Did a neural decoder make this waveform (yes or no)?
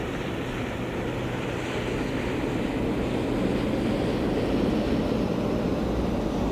no